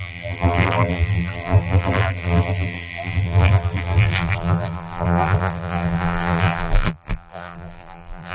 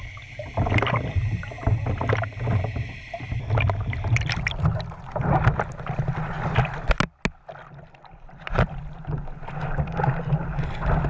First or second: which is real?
second